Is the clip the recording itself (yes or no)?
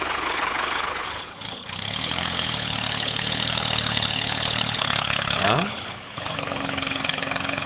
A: no